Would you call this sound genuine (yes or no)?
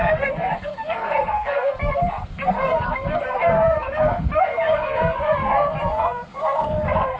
no